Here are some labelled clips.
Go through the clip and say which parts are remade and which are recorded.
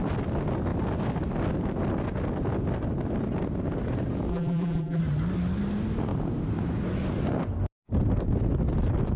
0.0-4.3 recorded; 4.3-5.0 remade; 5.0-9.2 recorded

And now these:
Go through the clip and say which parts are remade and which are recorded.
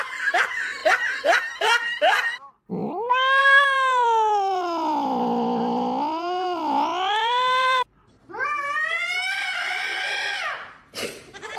0.0-0.8 remade; 0.8-1.4 recorded; 1.4-2.8 remade; 2.8-3.4 recorded; 3.4-11.6 remade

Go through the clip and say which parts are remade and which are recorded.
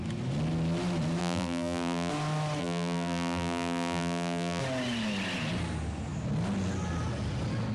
0.0-1.2 recorded; 1.2-2.1 remade; 2.1-2.6 recorded; 2.6-4.6 remade; 4.6-7.7 recorded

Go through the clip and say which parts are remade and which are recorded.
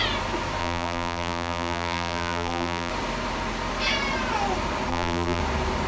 0.0-0.6 recorded; 0.6-2.9 remade; 2.9-4.9 recorded; 4.9-5.4 remade; 5.4-5.9 recorded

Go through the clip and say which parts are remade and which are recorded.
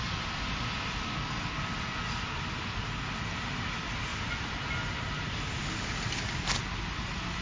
0.0-4.1 recorded; 4.1-4.7 remade; 4.7-7.4 recorded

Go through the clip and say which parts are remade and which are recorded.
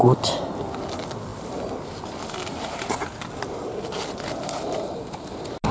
0.0-5.7 recorded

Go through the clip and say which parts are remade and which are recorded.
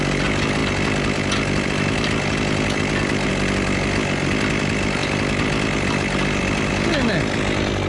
0.0-5.0 recorded; 5.0-6.7 remade; 6.7-7.9 recorded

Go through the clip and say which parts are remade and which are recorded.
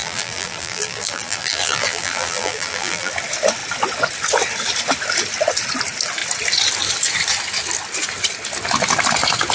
0.0-3.1 remade; 3.1-9.5 recorded